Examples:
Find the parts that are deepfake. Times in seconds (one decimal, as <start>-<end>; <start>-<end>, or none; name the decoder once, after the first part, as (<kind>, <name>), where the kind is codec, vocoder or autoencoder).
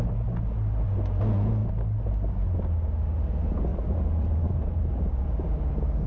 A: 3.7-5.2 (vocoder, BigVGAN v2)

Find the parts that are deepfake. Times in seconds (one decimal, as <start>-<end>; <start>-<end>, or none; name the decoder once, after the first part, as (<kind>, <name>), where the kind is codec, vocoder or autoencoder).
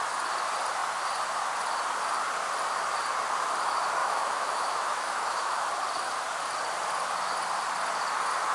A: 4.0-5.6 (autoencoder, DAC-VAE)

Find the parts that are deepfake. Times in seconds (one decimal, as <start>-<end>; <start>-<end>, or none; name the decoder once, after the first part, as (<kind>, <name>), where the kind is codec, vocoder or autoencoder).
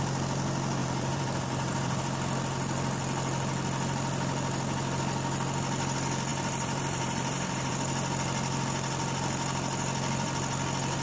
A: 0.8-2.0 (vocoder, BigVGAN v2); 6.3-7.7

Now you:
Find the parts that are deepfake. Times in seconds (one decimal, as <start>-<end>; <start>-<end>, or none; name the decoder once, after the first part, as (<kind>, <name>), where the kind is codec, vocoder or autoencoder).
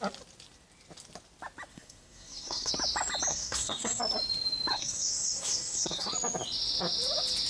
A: 1.7-2.7 (codec, SNAC); 3.3-4.0; 4.7-6.1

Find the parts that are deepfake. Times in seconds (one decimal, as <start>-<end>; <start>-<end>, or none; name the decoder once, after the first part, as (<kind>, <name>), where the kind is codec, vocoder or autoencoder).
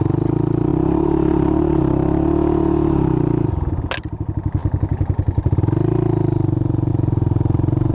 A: 0.7-1.8 (vocoder, BigVGAN v2)